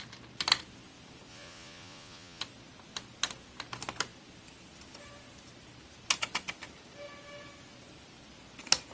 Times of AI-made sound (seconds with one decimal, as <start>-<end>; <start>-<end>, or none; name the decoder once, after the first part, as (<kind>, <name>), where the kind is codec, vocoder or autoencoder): 1.3-2.4 (vocoder, Vocos)